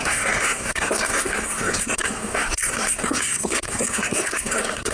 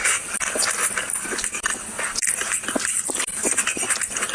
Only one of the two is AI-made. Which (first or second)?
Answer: first